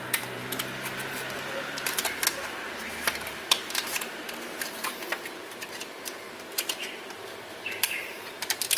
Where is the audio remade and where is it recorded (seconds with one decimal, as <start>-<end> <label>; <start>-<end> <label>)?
0.0-4.2 remade; 4.2-6.2 recorded; 6.2-8.8 remade